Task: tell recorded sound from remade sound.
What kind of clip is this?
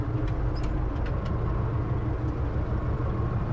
recorded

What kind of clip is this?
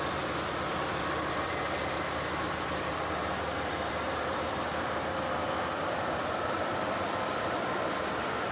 remade